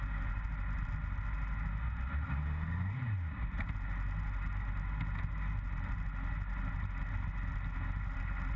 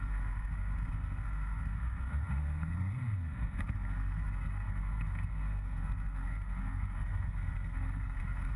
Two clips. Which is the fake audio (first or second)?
second